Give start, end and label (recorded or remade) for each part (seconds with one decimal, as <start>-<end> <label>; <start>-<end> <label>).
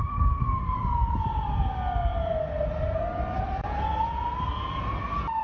0.0-0.6 remade; 0.6-5.4 recorded